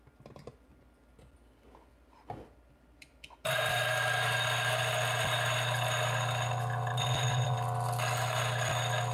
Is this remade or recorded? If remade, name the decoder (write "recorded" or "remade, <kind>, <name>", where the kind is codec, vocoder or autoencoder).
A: recorded